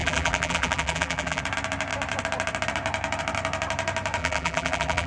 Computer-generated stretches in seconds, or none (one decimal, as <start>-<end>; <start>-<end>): 0.0-1.4; 4.2-5.1

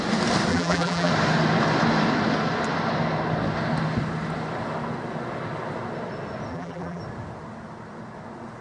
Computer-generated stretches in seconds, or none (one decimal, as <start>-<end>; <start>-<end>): 0.5-1.1; 6.5-7.0

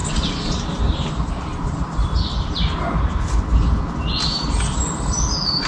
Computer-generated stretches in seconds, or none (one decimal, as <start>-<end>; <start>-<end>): none

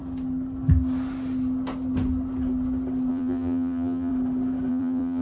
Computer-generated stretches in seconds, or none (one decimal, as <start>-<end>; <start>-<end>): 3.1-4.1; 4.7-5.2